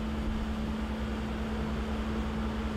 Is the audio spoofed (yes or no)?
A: no